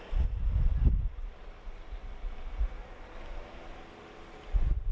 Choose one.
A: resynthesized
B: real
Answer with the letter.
B